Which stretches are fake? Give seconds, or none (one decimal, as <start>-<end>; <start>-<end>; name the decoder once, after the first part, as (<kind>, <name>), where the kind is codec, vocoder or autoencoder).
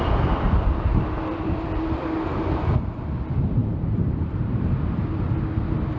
0.9-1.7 (vocoder, BigVGAN v2); 3.6-5.1